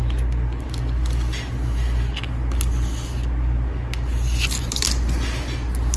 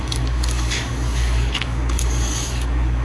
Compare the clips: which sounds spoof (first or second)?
second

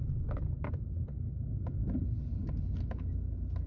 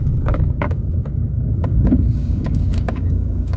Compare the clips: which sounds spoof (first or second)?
second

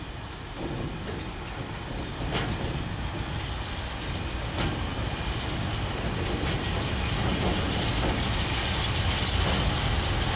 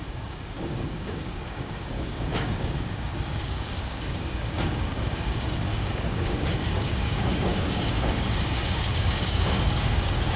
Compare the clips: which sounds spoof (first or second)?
second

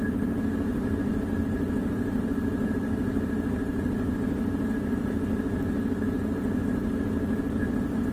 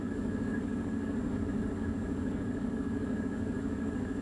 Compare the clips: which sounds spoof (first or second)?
second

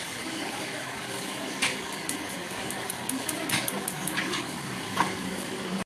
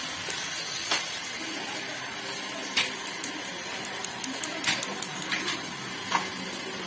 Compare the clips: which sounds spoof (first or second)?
first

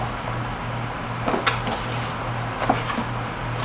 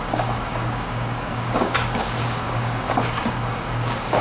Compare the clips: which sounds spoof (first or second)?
second